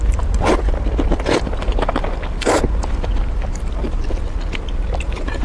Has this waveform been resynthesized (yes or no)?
no